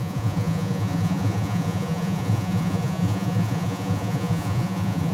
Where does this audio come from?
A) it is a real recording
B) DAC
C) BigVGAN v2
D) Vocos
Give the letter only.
D